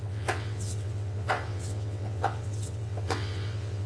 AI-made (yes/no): yes